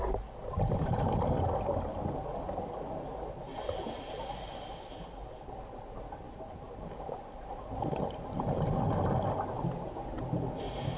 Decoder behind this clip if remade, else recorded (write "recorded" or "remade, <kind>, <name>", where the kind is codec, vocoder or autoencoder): recorded